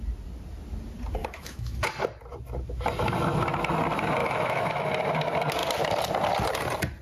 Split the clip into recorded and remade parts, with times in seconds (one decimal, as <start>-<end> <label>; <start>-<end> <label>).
0.0-1.2 recorded; 1.2-1.9 remade; 1.9-4.2 recorded; 4.2-4.9 remade; 4.9-7.0 recorded